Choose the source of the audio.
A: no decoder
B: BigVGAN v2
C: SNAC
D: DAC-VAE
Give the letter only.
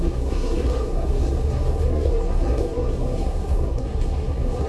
C